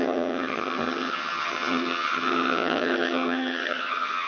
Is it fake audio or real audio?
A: fake